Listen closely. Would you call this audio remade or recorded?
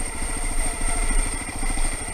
remade